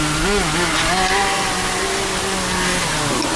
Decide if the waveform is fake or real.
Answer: real